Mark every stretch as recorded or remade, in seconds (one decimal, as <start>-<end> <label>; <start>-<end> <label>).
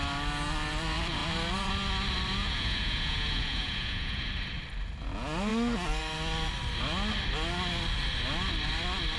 0.0-2.4 recorded; 2.4-4.3 remade; 4.3-9.2 recorded